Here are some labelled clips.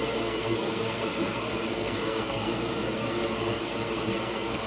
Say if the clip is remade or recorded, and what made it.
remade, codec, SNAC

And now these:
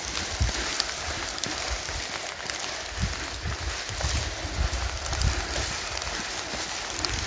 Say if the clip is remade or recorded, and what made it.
recorded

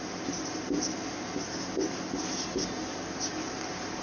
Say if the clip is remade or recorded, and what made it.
recorded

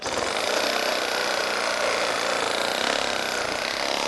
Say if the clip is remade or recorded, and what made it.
recorded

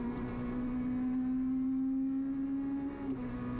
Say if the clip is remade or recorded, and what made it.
recorded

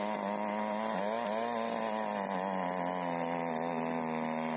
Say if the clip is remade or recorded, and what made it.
recorded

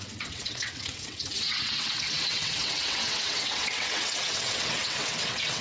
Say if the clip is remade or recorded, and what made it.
remade, vocoder, WaveNeXt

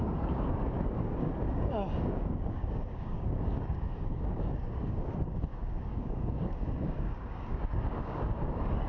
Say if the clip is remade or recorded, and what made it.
remade, codec, DAC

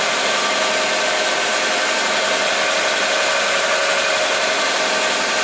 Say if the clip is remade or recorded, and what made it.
recorded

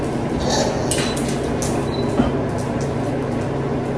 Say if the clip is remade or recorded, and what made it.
recorded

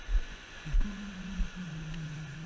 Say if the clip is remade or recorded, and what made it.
remade, vocoder, Vocos